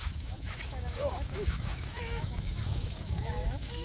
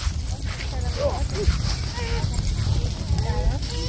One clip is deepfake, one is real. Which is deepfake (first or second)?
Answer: first